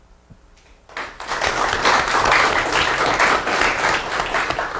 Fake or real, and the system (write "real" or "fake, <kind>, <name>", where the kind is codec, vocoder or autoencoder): real